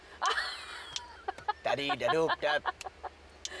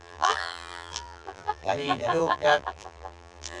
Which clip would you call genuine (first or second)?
first